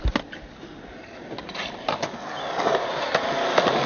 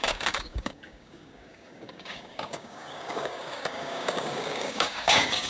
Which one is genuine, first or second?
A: first